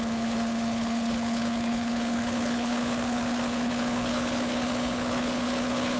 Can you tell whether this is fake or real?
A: fake